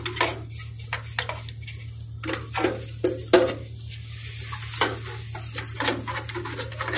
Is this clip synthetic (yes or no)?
no